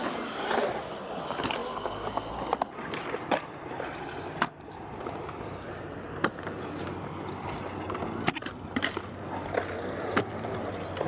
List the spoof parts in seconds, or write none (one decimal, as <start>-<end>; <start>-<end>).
none